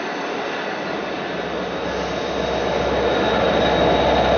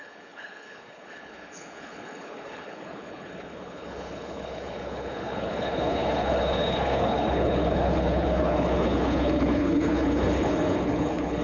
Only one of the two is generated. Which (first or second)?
second